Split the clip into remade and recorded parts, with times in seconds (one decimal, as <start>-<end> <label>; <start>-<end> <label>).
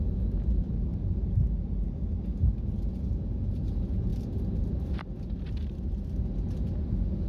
0.0-4.1 recorded; 4.1-6.2 remade; 6.2-7.3 recorded